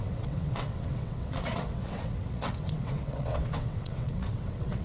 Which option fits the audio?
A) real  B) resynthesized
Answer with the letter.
B